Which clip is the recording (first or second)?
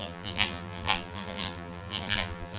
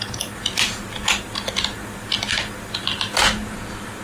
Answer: second